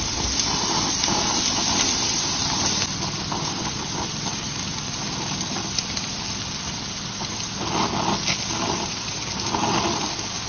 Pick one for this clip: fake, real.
real